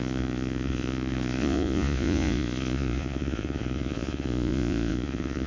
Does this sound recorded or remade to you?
remade